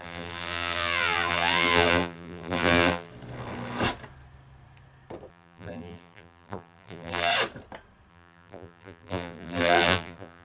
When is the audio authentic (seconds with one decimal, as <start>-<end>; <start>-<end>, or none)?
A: 3.1-5.3; 7.3-8.1